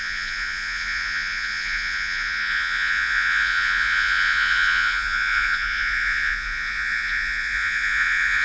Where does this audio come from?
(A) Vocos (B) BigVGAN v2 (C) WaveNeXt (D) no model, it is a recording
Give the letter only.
A